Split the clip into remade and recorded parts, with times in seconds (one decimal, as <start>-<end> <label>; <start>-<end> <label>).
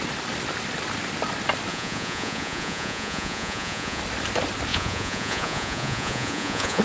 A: 0.0-1.7 recorded; 1.7-4.0 remade; 4.0-4.7 recorded; 4.7-6.8 remade